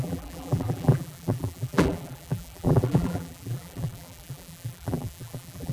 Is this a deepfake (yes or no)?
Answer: yes